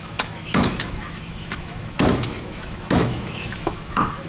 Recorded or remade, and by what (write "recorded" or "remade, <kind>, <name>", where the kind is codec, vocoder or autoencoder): remade, autoencoder, DAC-VAE